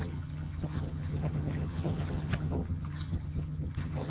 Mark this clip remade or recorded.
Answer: remade